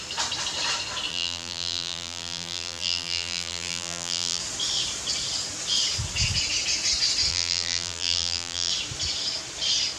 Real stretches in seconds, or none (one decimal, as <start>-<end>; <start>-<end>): 0.0-1.1; 4.4-7.3; 8.7-10.0